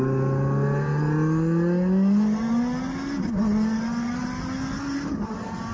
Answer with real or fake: real